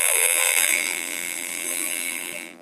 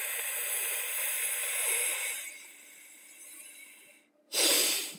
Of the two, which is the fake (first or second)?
first